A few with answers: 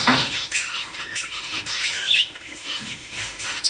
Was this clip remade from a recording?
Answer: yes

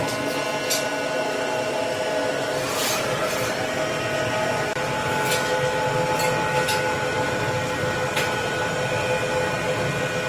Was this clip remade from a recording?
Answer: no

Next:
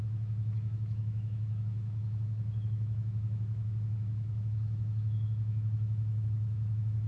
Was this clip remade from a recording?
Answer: yes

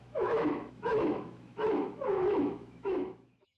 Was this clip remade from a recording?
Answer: yes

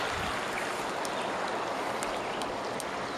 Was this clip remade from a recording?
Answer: no